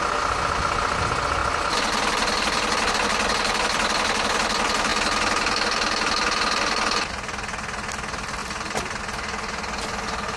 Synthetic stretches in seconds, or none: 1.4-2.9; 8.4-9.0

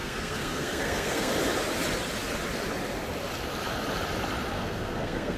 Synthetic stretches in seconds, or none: 0.0-1.3; 4.5-5.4